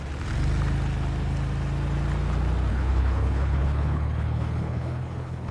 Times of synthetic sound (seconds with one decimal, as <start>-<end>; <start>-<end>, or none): 2.7-5.5